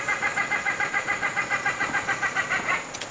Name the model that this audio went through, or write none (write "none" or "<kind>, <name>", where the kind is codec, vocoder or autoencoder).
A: vocoder, Vocos